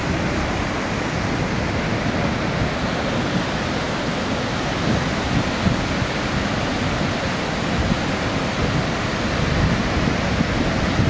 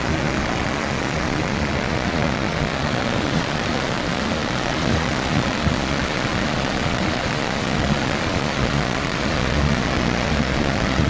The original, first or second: first